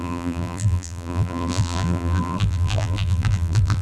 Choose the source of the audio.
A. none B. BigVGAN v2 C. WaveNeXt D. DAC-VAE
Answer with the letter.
B